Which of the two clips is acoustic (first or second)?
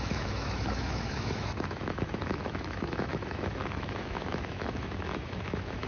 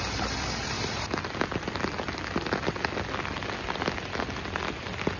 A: second